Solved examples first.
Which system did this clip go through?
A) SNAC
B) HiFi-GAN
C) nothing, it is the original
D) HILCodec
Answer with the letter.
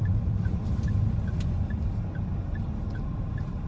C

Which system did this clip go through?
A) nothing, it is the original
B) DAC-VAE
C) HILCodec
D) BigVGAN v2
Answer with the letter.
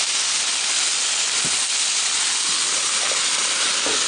A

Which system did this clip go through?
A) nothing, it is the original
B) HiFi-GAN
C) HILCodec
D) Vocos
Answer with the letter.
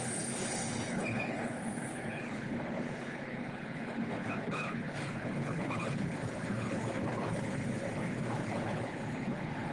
C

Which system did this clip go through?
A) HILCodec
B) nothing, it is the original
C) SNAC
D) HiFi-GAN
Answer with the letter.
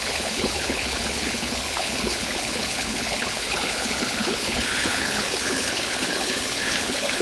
A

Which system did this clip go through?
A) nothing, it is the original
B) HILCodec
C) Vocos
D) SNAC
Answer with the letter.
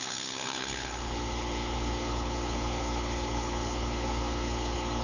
B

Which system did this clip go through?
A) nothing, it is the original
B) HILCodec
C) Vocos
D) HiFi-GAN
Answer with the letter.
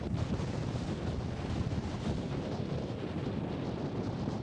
A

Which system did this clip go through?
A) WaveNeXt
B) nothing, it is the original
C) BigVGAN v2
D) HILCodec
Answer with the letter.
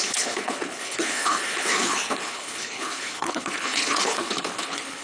D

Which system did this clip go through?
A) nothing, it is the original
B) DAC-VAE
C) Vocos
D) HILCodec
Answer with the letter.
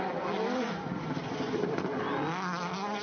A